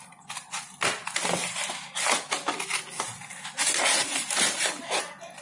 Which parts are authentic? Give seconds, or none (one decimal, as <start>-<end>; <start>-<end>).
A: 0.0-5.4